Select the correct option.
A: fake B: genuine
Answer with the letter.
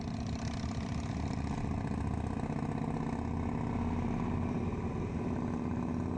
B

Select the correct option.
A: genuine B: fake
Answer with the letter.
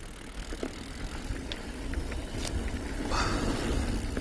A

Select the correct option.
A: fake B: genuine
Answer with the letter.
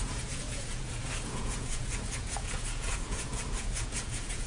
A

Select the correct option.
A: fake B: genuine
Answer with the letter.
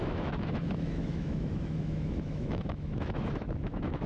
A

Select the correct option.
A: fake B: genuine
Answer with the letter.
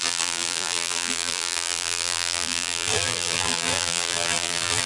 A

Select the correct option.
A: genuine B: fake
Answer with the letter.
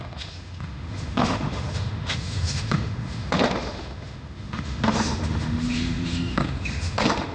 B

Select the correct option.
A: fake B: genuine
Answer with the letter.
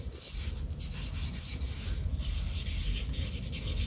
B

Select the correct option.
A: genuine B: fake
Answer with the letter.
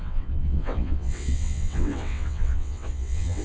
B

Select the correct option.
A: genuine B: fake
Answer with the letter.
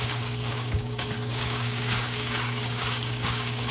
B